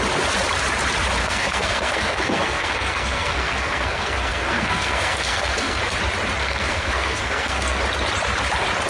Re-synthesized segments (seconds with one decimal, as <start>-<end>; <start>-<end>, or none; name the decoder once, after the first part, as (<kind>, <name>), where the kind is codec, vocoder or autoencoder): 1.2-5.8 (codec, SNAC); 6.4-7.8